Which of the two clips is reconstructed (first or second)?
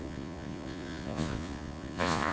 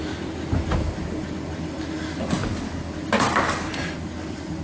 first